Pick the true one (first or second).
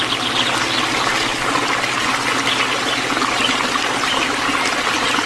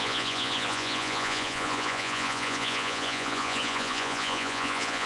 first